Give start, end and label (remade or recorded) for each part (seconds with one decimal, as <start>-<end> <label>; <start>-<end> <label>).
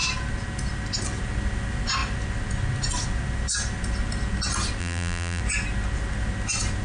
0.0-4.8 recorded; 4.8-5.4 remade; 5.4-6.8 recorded